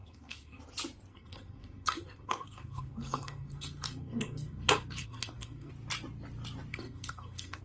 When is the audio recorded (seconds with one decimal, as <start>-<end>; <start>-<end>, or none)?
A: 0.6-1.1; 5.7-6.7